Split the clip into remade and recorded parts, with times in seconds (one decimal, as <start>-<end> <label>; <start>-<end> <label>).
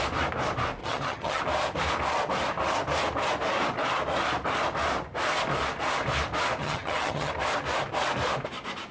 0.0-0.8 recorded; 0.8-1.4 remade; 1.4-6.6 recorded; 6.6-7.3 remade; 7.3-8.9 recorded